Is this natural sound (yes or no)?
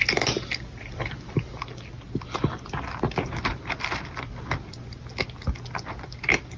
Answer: yes